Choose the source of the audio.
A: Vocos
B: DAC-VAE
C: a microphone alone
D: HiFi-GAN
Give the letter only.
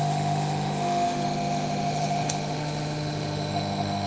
B